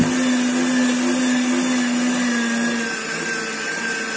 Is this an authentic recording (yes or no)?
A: yes